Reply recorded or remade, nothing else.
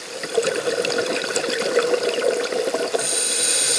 recorded